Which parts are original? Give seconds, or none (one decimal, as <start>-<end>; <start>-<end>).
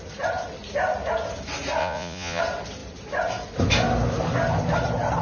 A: 0.0-1.8; 2.4-5.2